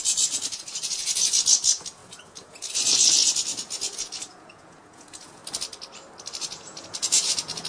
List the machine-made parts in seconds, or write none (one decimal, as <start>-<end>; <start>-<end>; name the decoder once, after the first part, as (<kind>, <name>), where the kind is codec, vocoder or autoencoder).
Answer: 0.0-5.4 (vocoder, Vocos); 6.4-7.7